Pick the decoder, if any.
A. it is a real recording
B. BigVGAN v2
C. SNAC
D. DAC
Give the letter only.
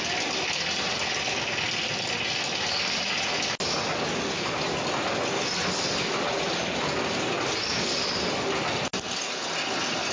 A